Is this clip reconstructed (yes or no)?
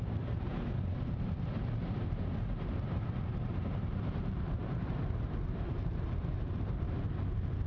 yes